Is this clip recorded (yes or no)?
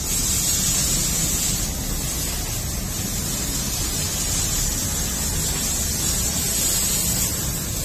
yes